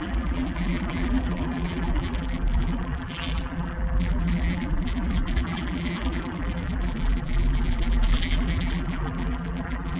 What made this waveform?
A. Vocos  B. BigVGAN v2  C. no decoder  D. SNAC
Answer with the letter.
B